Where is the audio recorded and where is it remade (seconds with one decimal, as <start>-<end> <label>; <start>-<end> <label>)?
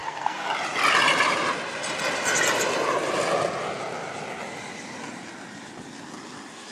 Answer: 0.0-0.5 remade; 0.5-6.7 recorded